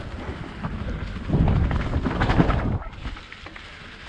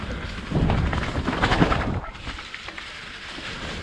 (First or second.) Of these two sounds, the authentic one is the first